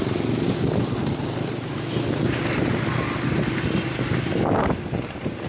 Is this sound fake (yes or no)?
no